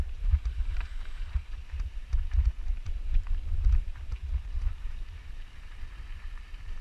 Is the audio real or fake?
fake